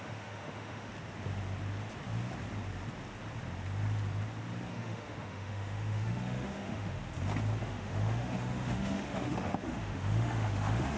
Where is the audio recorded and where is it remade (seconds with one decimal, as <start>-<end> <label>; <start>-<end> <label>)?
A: 0.0-0.9 remade; 0.9-4.7 recorded; 4.7-7.0 remade; 7.0-7.6 recorded; 7.6-11.0 remade